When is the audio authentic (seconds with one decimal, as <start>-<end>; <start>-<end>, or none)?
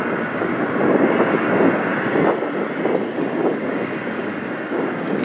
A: 0.5-1.3; 1.9-3.2